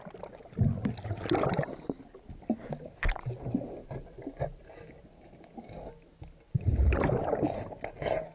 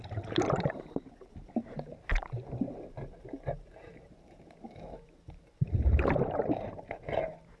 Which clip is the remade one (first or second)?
second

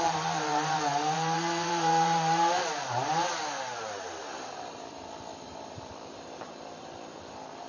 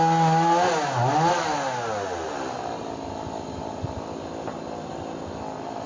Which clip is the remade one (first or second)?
first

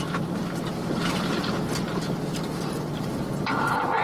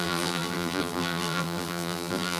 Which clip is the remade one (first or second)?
second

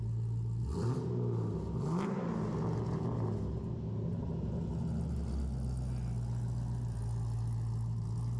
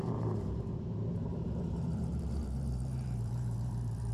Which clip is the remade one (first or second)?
second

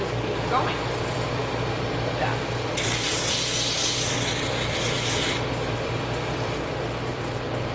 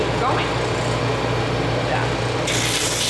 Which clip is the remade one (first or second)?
first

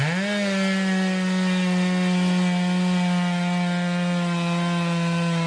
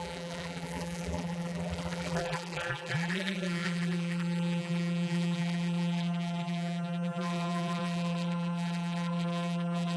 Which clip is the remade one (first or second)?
second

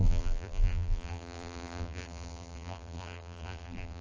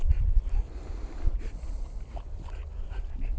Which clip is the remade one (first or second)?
first